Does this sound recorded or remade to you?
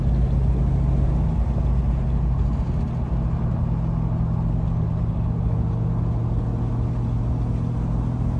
recorded